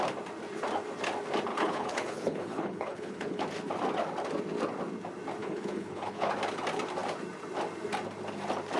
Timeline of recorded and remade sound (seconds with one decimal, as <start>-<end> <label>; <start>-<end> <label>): 0.0-1.5 recorded; 1.5-3.4 remade; 3.4-5.4 recorded; 5.4-6.3 remade; 6.3-8.8 recorded